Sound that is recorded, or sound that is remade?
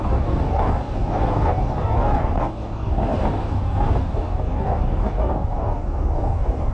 remade